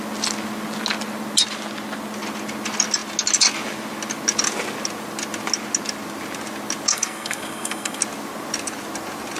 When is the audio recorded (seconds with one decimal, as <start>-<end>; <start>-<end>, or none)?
0.0-6.9; 8.0-9.4